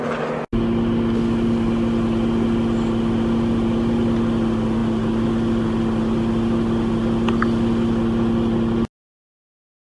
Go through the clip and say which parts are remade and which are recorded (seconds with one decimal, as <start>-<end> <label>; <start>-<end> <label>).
0.0-9.9 recorded